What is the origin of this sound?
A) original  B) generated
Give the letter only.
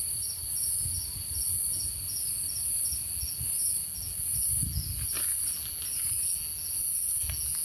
A